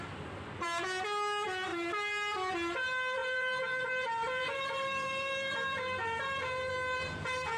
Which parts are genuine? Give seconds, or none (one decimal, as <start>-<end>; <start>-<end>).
0.0-1.7; 2.5-3.2; 6.7-7.6